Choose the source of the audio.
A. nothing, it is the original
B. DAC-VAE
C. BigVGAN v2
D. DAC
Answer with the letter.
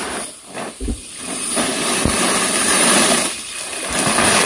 C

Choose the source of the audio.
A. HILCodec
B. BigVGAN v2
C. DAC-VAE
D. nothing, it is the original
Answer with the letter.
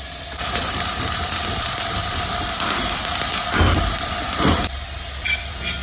B